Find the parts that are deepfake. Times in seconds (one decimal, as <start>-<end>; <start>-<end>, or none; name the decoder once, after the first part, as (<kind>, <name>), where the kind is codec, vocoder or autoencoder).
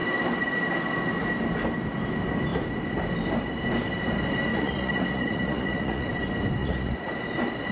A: 4.5-6.1 (vocoder, Vocos); 6.6-7.1